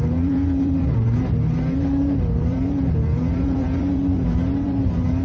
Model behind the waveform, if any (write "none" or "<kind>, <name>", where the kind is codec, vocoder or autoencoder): vocoder, BigVGAN v2